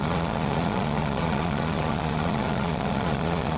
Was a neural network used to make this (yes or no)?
yes